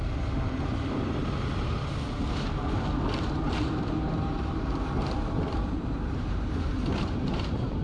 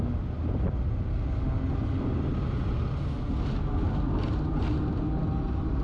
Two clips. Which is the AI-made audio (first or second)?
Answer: first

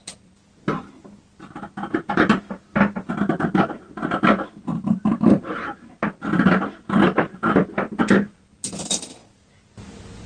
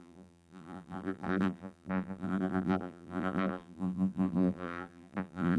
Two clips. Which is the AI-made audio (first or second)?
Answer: second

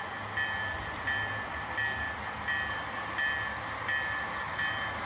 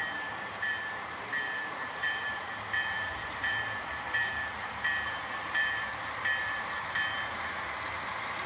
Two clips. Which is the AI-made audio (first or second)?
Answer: second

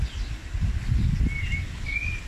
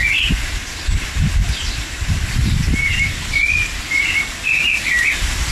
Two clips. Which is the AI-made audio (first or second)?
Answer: second